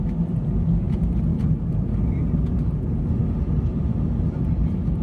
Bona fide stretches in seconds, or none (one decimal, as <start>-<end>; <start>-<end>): 0.0-5.0